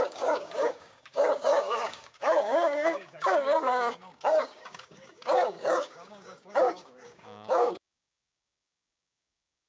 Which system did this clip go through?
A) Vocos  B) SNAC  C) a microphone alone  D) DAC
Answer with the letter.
D